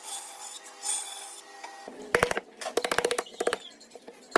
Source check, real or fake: real